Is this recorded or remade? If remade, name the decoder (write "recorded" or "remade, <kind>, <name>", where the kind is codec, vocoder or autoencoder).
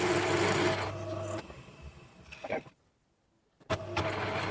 recorded